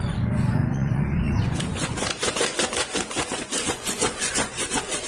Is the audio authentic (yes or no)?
no